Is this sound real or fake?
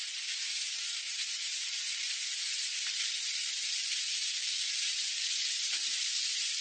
fake